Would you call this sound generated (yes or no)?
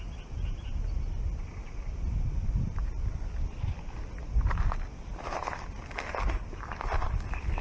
no